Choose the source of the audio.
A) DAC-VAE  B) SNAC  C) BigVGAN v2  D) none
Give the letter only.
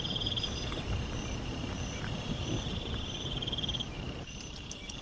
C